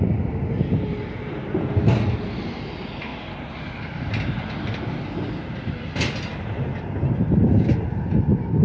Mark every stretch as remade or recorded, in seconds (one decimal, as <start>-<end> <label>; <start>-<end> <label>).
0.0-8.6 recorded